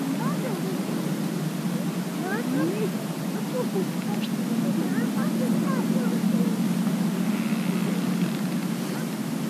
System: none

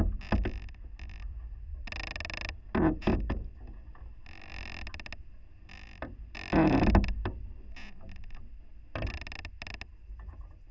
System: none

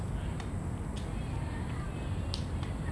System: none